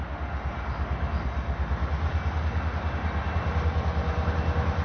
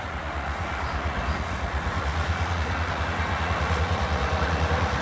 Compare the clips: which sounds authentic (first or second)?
first